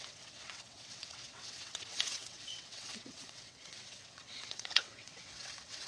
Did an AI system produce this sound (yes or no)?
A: yes